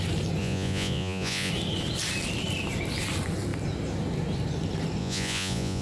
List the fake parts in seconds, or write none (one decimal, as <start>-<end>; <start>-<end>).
0.4-1.5; 5.0-5.8